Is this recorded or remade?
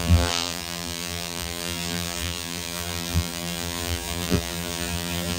remade